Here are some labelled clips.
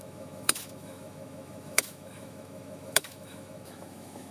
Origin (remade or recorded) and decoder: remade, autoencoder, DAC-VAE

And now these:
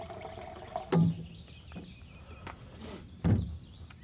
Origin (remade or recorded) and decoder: recorded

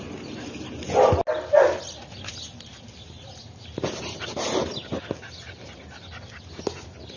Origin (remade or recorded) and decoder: recorded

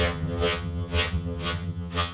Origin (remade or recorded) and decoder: remade, vocoder, HiFi-GAN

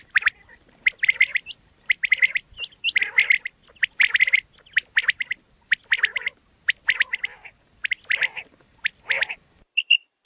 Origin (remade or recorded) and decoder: recorded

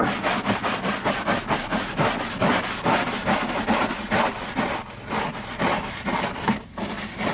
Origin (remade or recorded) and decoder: recorded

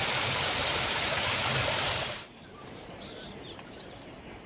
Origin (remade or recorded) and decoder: remade, vocoder, BigVGAN v2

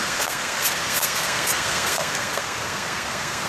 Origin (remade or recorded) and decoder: remade, codec, SNAC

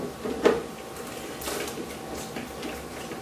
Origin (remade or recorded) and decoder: recorded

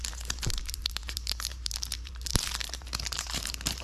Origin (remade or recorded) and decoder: remade, vocoder, BigVGAN v2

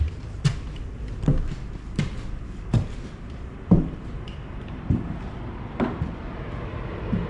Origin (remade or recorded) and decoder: remade, vocoder, BigVGAN v2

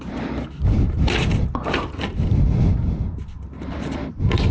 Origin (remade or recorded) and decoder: recorded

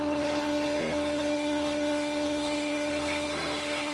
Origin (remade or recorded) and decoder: remade, codec, SNAC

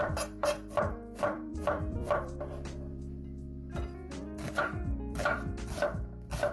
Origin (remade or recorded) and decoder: remade, vocoder, BigVGAN v2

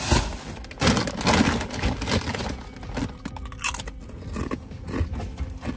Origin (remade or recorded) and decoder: recorded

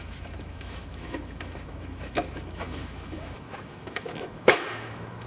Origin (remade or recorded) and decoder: remade, autoencoder, DAC-VAE